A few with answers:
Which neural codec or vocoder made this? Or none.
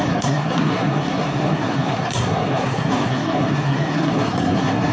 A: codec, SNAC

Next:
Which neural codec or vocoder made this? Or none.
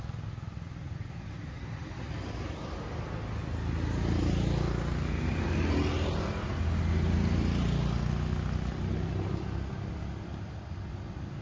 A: none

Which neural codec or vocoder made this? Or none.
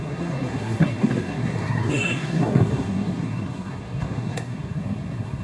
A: codec, SNAC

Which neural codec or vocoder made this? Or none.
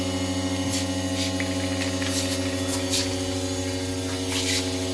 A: none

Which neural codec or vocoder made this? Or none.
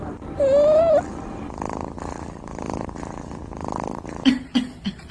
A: none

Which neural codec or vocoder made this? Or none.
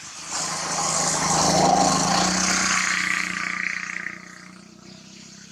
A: none